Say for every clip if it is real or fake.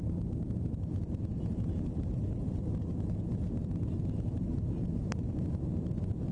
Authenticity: fake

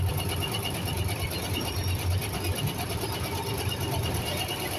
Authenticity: real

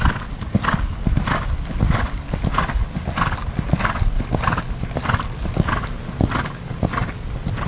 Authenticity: real